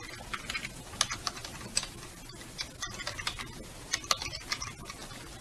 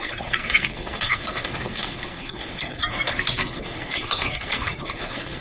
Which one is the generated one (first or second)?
second